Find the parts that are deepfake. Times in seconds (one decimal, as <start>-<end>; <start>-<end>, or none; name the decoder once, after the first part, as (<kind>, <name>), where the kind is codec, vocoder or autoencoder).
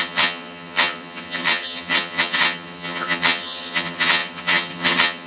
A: 0.0-5.3 (vocoder, HiFi-GAN)